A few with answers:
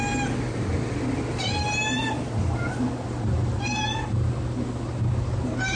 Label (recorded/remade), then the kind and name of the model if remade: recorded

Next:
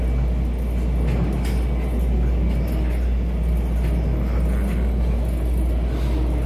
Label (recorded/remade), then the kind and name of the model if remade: recorded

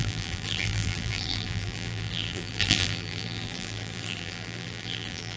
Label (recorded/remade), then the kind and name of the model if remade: remade, vocoder, BigVGAN v2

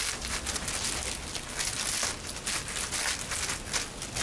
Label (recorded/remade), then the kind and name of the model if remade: recorded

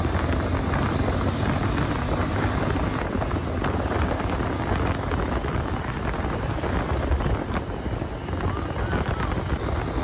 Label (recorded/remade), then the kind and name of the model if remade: recorded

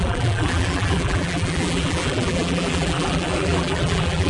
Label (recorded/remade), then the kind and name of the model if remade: remade, vocoder, BigVGAN v2